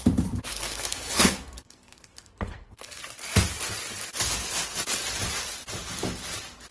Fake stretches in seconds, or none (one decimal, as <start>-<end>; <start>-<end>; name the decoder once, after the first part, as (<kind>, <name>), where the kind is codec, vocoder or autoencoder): 0.5-3.0 (codec, SNAC)